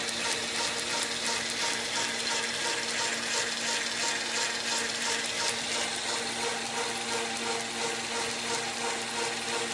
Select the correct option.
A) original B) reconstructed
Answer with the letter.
A